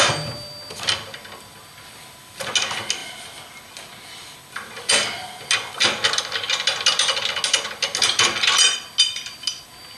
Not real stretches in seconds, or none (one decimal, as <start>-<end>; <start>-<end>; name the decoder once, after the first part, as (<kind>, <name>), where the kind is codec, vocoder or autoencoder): none